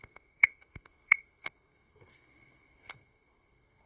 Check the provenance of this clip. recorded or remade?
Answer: remade